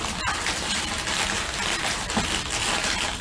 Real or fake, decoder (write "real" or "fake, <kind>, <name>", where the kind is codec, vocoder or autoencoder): real